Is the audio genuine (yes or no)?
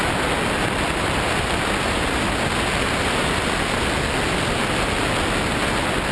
yes